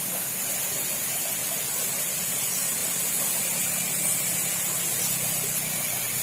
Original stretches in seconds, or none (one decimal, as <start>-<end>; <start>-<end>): 0.0-6.2

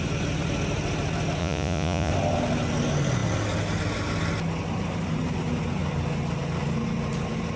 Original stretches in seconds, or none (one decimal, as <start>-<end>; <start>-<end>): 0.0-1.4; 2.1-7.6

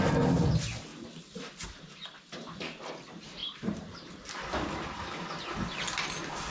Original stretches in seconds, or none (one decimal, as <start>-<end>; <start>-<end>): 0.0-3.4; 4.2-6.5

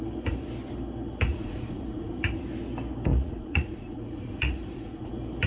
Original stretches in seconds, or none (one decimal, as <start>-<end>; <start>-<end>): 0.0-1.3; 2.1-3.1; 5.1-5.5

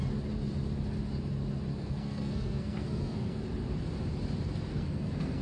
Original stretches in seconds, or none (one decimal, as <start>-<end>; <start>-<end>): 0.0-1.7; 3.4-4.7

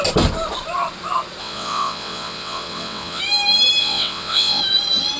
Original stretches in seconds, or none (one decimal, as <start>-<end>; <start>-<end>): 0.0-1.4; 3.2-3.8; 4.6-5.2

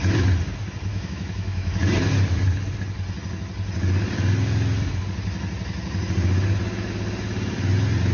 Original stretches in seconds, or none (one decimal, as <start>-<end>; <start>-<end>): 0.0-0.9; 1.7-8.1

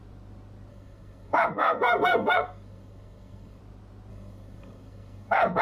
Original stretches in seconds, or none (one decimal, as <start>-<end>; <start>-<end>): 0.0-0.7; 3.6-4.1